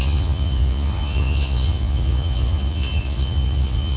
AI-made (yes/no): yes